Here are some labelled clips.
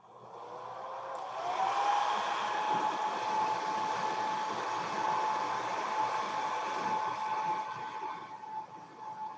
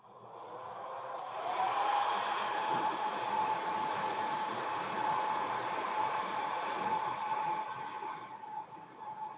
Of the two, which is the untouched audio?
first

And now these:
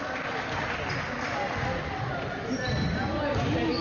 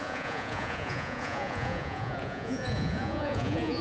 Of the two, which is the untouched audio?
first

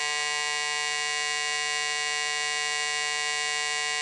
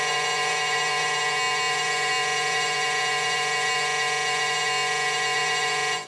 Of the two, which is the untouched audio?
first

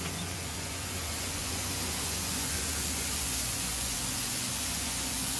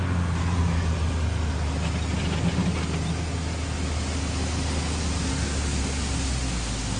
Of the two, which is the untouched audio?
second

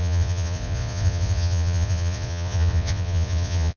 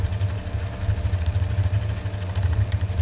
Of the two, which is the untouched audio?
second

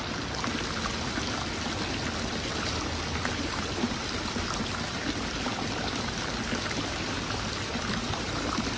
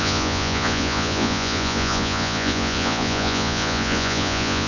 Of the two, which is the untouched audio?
first